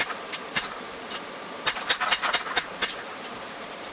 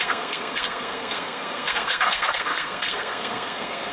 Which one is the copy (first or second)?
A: second